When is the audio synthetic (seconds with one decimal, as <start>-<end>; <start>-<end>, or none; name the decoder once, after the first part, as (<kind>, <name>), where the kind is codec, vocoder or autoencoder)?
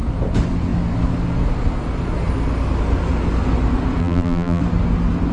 4.0-4.6 (vocoder, BigVGAN v2)